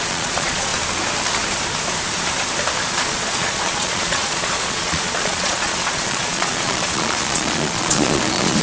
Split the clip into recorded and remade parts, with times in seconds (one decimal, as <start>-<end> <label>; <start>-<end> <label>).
0.0-0.7 remade; 0.7-2.8 recorded; 2.8-8.6 remade